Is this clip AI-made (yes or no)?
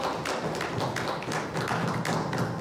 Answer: no